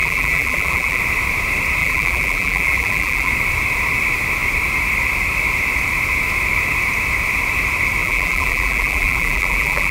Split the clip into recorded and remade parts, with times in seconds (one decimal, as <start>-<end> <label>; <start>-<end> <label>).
0.0-1.0 remade; 1.0-1.8 recorded; 1.8-3.3 remade; 3.3-8.0 recorded; 8.0-9.9 remade